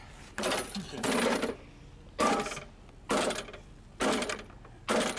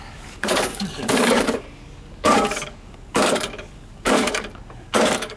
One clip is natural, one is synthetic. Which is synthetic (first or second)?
second